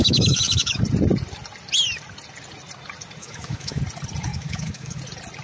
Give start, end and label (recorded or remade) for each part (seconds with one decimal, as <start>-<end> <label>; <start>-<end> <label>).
0.0-0.8 remade; 0.8-3.2 recorded; 3.2-3.8 remade; 3.8-4.3 recorded; 4.3-5.0 remade; 5.0-5.4 recorded